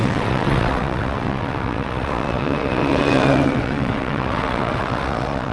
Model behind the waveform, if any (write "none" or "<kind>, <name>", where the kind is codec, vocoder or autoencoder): vocoder, WaveNeXt